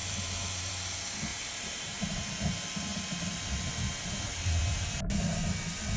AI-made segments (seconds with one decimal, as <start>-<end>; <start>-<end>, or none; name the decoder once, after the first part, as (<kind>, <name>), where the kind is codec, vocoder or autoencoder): 0.0-0.7 (vocoder, BigVGAN v2); 1.3-2.0